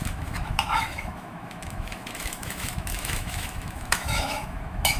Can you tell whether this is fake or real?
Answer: fake